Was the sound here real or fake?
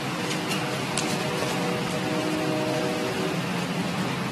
real